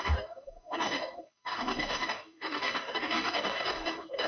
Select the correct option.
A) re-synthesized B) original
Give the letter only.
A